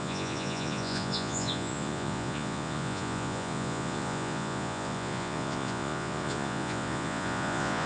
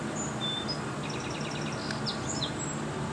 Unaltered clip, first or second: second